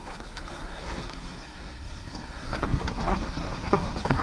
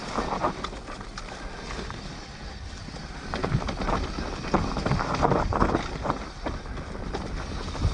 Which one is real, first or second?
second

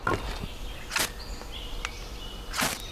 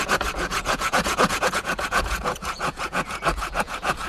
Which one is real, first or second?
first